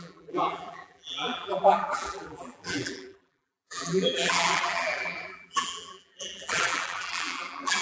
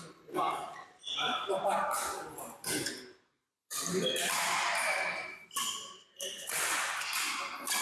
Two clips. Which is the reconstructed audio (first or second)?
first